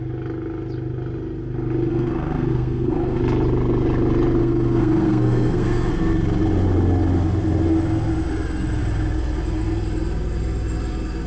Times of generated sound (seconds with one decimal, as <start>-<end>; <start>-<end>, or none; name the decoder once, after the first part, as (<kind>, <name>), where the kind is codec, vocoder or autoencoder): 1.9-3.2 (codec, SNAC); 4.4-5.9